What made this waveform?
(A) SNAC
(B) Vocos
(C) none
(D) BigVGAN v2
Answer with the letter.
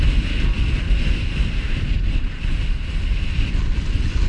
C